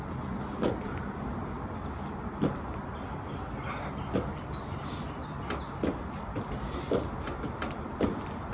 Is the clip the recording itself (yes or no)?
yes